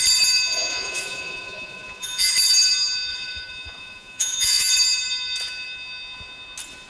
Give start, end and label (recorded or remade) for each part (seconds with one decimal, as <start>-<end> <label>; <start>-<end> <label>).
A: 0.0-0.7 recorded; 0.7-2.3 remade; 2.3-3.1 recorded; 3.1-4.7 remade; 4.7-6.9 recorded